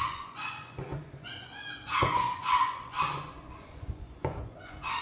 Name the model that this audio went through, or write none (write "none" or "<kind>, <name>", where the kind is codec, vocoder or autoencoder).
vocoder, Vocos